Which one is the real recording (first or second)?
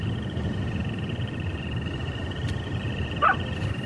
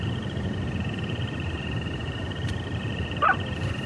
first